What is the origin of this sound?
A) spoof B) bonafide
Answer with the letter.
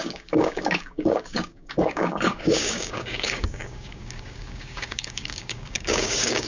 A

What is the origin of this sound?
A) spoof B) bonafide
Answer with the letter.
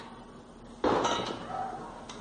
B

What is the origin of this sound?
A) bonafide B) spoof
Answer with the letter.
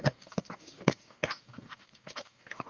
B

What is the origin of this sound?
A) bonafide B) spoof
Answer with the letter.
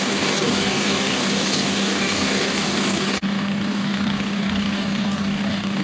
B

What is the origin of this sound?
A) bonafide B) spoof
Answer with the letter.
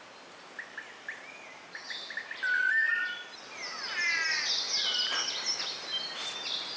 A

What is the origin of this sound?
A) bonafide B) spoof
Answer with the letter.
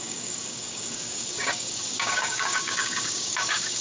B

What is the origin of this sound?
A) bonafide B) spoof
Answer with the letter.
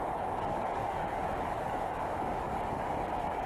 B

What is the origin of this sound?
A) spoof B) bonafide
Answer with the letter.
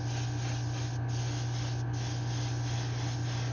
B